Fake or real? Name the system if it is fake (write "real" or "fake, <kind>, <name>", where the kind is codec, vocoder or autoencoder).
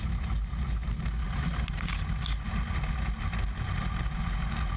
real